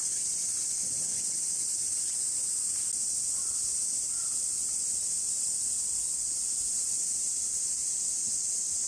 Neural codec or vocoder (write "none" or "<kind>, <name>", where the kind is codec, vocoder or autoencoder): none